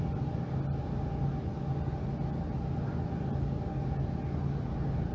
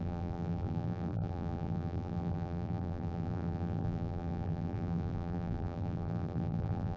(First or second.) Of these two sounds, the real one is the first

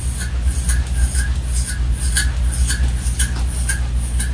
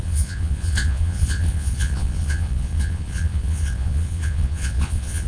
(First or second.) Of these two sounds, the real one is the first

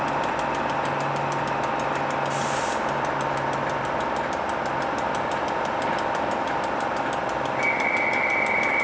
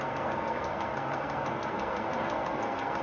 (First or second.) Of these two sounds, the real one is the first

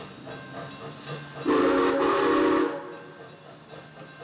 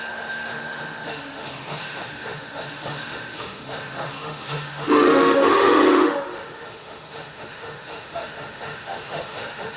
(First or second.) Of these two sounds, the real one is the first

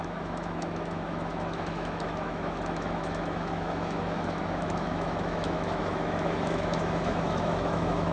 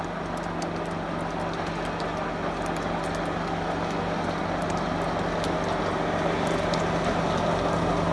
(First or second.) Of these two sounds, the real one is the second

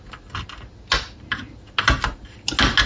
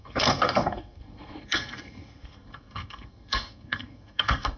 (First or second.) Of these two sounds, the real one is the first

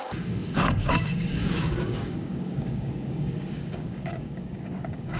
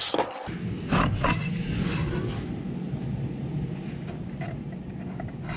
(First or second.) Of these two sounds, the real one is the second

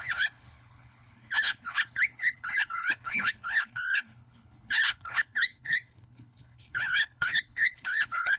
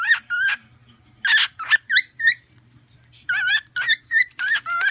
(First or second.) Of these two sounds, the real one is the second